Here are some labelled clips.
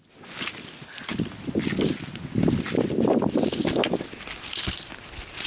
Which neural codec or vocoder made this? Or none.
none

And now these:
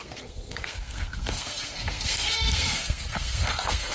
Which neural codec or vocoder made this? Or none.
codec, SNAC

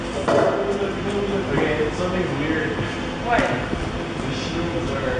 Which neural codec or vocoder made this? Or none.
none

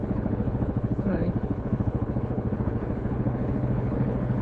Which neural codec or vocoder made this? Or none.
codec, HILCodec